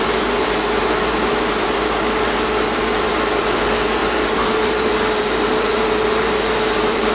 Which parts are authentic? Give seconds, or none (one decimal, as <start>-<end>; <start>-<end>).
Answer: none